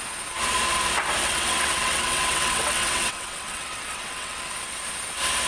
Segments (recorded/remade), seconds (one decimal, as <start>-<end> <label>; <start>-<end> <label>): 0.0-1.2 recorded; 1.2-4.5 remade; 4.5-5.5 recorded